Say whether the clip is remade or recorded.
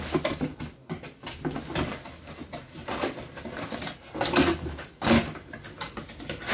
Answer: recorded